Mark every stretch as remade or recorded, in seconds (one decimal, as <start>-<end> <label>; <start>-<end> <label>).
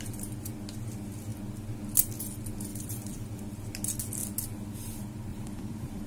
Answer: 0.0-2.7 recorded; 2.7-3.5 remade; 3.5-5.3 recorded; 5.3-6.1 remade